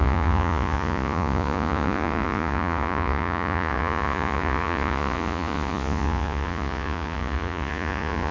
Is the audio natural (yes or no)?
no